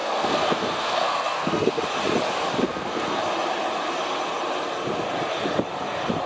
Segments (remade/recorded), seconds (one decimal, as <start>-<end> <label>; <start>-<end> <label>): 0.0-1.8 remade; 1.8-2.6 recorded; 2.6-3.2 remade; 3.2-6.3 recorded